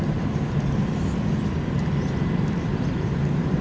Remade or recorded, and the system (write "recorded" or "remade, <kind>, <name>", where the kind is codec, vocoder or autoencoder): recorded